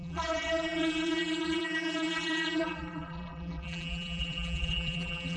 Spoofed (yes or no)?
yes